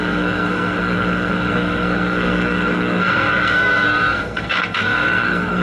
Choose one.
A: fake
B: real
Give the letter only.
A